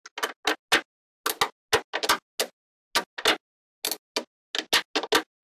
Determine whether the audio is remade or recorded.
recorded